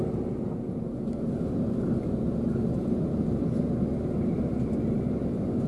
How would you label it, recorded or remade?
recorded